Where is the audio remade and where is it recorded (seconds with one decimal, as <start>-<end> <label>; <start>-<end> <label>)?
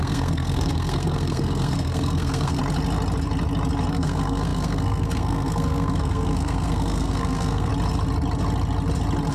0.0-2.6 remade; 2.6-3.9 recorded; 3.9-7.7 remade; 7.7-9.3 recorded